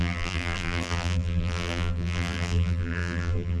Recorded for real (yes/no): no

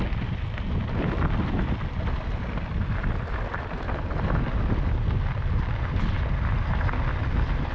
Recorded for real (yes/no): yes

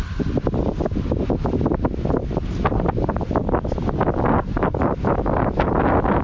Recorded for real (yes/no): yes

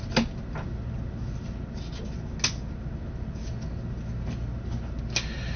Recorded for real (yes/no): yes